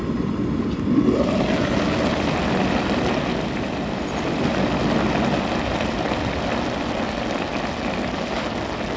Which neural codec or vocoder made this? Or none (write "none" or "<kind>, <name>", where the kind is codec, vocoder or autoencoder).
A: none